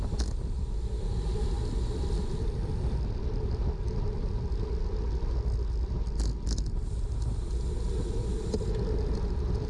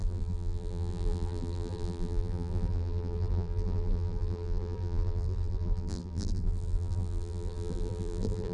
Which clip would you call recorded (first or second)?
first